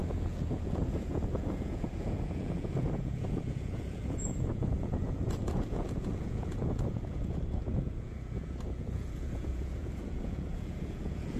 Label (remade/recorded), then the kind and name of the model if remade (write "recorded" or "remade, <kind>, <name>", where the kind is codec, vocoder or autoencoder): remade, vocoder, Vocos